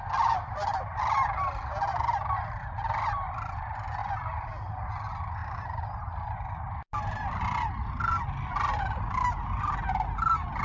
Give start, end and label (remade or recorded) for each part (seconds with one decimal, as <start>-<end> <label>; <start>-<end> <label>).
0.0-10.6 recorded